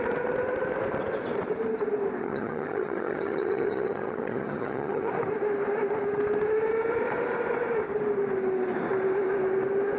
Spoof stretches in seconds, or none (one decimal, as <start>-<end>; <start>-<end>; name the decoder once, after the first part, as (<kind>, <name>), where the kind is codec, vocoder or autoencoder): 2.2-5.1 (vocoder, HiFi-GAN)